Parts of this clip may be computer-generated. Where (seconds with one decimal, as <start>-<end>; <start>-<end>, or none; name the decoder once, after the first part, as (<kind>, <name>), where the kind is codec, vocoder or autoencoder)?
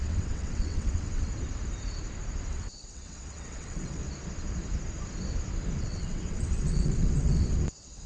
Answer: 0.0-1.3 (vocoder, WaveNeXt); 2.5-4.0; 5.8-8.1